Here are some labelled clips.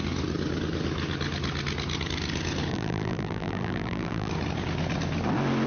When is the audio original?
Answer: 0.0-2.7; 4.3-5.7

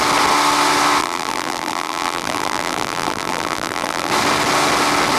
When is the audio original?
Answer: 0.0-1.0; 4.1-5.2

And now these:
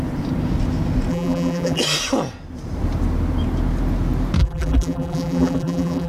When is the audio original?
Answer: 0.0-1.1; 1.8-4.4